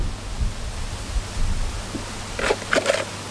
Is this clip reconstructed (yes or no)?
no